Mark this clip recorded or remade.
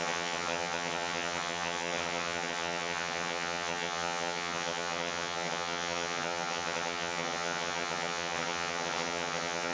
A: remade